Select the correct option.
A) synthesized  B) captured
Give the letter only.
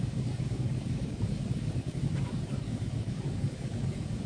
A